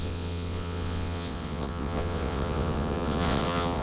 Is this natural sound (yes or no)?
no